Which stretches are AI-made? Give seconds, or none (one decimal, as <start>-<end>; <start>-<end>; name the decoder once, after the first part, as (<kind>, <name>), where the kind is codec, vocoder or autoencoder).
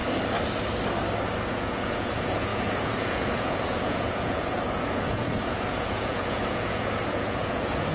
1.5-7.9 (vocoder, Vocos)